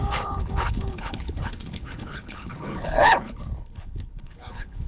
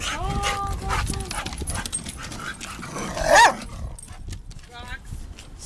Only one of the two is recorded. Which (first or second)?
second